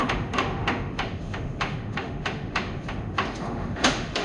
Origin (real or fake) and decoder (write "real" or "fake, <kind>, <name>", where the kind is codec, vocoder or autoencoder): fake, autoencoder, DAC-VAE